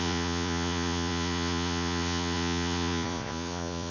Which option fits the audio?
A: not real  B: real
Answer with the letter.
A